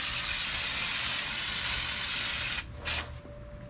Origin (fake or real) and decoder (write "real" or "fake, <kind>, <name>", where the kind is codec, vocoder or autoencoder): real